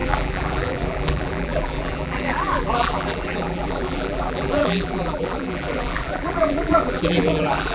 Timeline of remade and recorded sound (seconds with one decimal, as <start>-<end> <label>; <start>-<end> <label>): 0.0-7.7 remade